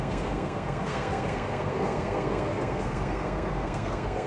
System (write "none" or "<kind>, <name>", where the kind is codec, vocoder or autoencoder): codec, SNAC